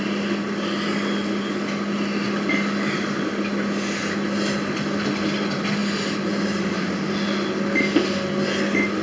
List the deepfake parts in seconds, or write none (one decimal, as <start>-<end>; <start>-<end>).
none